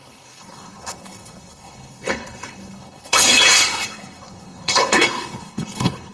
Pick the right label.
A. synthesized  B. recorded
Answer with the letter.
A